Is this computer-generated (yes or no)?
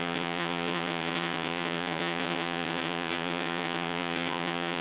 yes